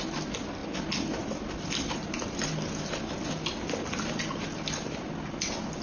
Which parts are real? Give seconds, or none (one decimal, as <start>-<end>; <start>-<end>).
0.0-5.8